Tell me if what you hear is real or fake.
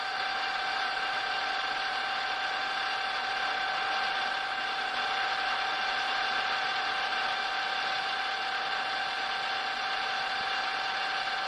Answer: real